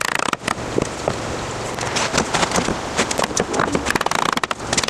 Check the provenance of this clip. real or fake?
real